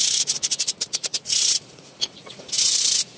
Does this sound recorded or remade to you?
remade